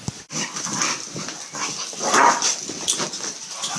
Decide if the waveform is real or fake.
real